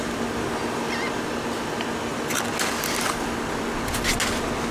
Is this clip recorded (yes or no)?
yes